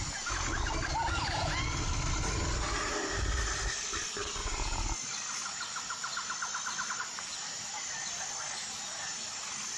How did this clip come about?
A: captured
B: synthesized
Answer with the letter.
A